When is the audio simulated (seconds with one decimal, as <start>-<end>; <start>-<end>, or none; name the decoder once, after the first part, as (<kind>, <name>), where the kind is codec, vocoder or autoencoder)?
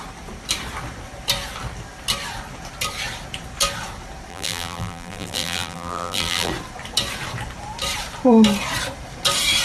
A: 4.3-6.5 (vocoder, BigVGAN v2)